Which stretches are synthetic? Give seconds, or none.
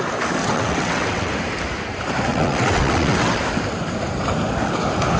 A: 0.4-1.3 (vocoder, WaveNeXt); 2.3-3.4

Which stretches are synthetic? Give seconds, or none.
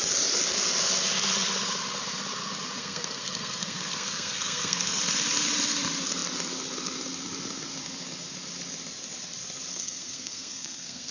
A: 2.8-5.0 (codec, SNAC); 9.7-11.1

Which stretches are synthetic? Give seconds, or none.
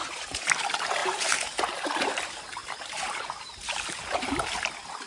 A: 0.0-0.6 (vocoder, BigVGAN v2); 1.0-2.2; 2.6-4.3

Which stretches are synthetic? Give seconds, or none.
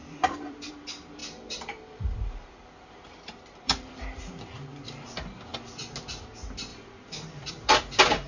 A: 0.0-0.7 (vocoder, BigVGAN v2); 1.2-4.3; 6.7-7.5